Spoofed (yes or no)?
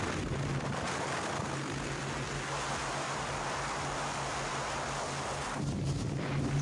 no